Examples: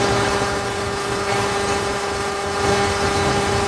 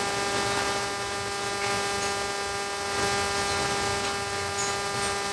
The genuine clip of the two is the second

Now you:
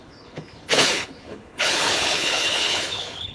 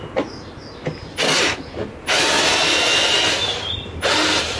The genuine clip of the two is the second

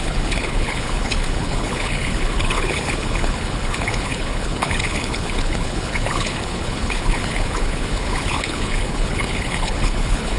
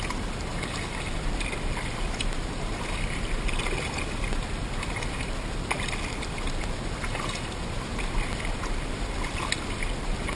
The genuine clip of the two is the second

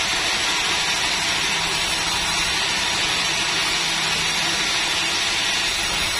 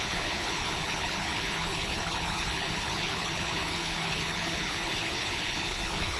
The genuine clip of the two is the first